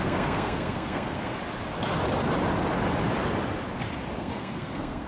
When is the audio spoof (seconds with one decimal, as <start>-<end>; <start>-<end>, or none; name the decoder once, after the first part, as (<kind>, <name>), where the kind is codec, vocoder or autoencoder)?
0.0-1.3 (codec, SNAC); 4.2-5.1